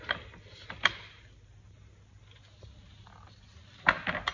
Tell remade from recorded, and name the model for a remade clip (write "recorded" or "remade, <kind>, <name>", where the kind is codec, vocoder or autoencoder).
recorded